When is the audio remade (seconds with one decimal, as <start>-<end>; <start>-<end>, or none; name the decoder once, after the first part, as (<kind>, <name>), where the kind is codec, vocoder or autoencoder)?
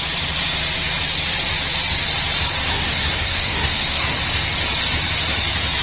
2.7-4.2 (codec, SNAC)